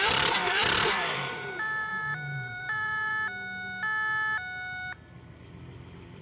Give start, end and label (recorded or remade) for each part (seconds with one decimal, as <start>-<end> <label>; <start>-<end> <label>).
0.0-3.1 remade; 3.1-5.4 recorded; 5.4-6.2 remade